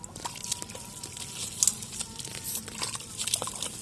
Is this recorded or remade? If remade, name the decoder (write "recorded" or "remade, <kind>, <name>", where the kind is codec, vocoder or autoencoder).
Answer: recorded